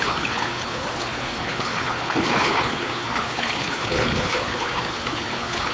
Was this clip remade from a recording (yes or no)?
yes